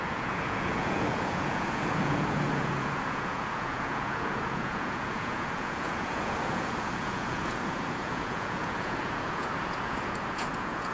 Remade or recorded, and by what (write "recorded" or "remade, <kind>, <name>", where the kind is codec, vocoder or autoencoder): remade, vocoder, Vocos